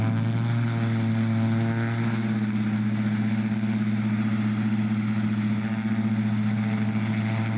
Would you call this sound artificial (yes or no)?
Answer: no